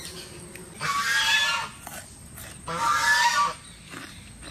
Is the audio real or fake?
real